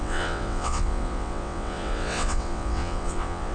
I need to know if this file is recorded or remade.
remade